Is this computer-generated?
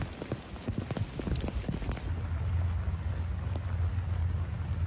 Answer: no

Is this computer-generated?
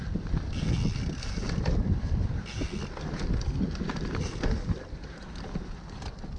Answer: no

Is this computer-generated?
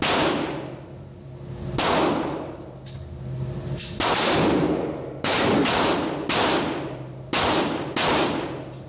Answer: no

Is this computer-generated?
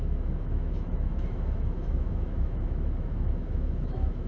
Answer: yes